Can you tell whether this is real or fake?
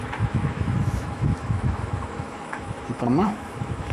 fake